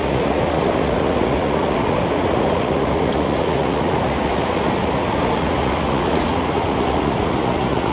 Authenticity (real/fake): fake